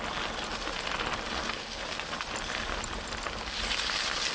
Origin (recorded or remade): recorded